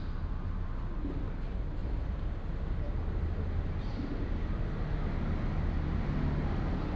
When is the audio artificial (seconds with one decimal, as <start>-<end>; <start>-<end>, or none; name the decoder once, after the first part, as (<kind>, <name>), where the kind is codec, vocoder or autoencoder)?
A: 1.8-2.3 (vocoder, BigVGAN v2)